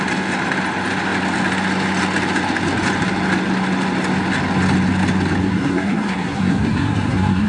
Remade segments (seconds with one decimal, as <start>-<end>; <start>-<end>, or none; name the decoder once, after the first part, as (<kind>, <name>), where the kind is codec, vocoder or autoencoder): 5.4-7.5 (codec, SNAC)